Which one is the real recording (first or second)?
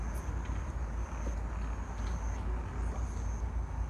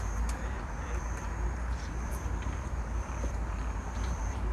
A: first